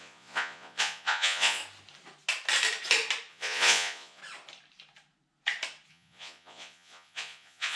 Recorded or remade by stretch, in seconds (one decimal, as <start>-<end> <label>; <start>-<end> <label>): 0.0-1.6 remade; 1.6-3.3 recorded; 3.3-4.2 remade; 4.2-5.9 recorded; 5.9-7.8 remade